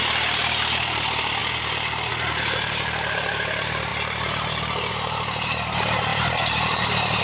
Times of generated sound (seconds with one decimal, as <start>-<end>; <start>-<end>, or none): 1.4-2.1; 6.1-7.2